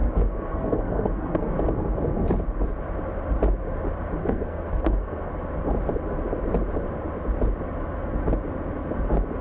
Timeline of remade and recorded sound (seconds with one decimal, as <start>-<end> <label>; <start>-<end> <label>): 0.0-1.5 remade; 1.5-4.2 recorded; 4.2-5.3 remade; 5.3-9.4 recorded